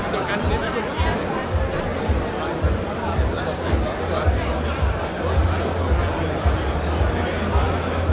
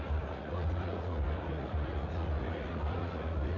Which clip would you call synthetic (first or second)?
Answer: second